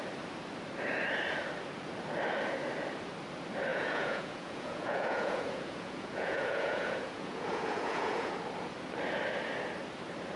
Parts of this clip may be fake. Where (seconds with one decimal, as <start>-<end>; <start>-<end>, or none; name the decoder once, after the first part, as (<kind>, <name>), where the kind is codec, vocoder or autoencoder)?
3.7-8.4 (vocoder, Vocos)